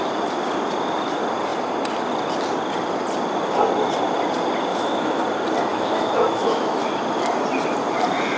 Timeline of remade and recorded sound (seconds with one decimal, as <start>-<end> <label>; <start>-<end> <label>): 0.0-4.7 recorded; 4.7-5.2 remade; 5.2-5.7 recorded; 5.7-6.9 remade; 6.9-8.4 recorded